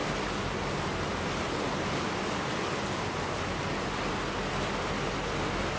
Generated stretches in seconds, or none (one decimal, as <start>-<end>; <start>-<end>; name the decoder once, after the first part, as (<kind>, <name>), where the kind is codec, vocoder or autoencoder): none